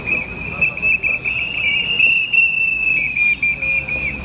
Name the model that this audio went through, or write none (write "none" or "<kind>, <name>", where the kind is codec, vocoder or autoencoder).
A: none